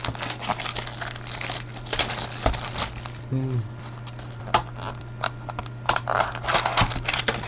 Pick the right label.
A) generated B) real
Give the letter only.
B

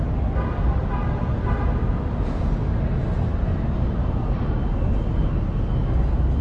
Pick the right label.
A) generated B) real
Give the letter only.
B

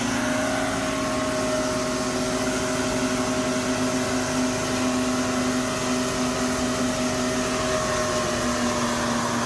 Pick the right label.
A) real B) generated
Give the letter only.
A